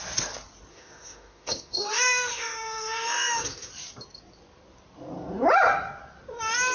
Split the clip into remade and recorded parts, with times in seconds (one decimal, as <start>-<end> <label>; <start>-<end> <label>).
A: 0.0-0.7 recorded; 0.7-3.7 remade; 3.7-6.7 recorded